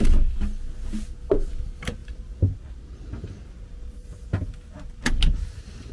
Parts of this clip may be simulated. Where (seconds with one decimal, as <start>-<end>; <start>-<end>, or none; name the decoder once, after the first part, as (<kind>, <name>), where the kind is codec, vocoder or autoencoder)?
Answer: none